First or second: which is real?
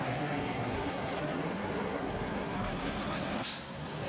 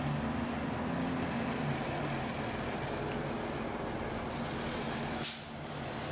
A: second